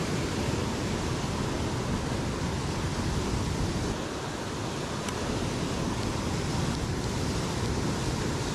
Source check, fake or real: real